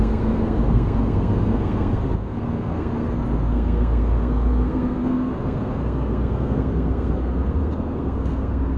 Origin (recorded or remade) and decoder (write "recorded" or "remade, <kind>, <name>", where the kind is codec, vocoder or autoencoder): remade, codec, SNAC